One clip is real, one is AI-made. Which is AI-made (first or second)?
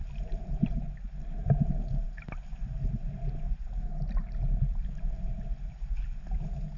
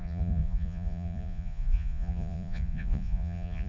second